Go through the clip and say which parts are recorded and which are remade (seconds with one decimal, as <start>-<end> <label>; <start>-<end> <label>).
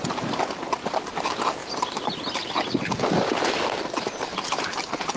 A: 0.0-5.2 recorded